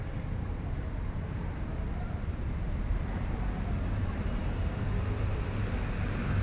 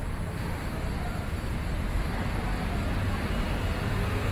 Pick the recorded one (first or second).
second